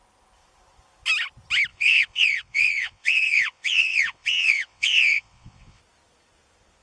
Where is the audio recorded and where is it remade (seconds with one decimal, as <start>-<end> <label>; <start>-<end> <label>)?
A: 0.0-1.7 recorded; 1.7-5.8 remade; 5.8-6.8 recorded